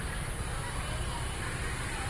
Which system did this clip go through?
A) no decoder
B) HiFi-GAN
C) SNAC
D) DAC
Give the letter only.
A